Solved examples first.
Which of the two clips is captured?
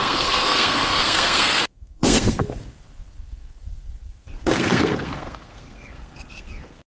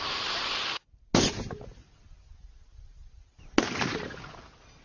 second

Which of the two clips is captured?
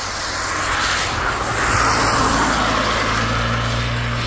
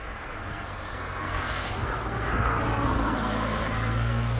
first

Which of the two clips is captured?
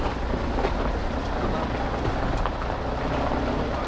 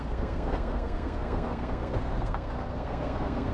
first